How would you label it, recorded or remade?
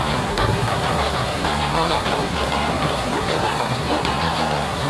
remade